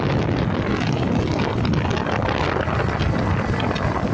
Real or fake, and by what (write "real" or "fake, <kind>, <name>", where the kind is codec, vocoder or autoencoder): real